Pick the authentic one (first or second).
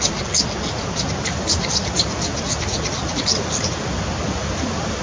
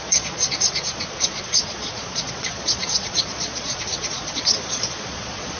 first